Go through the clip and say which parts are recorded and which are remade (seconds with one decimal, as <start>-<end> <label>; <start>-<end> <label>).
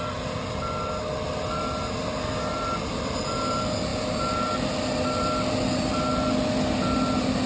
0.0-7.5 recorded